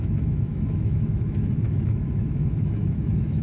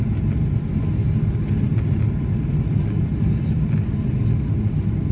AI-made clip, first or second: first